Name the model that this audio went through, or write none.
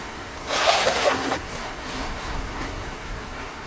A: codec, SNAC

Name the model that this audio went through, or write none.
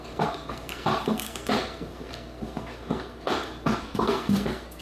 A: codec, SNAC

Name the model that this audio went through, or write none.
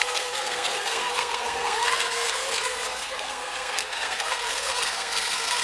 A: codec, SNAC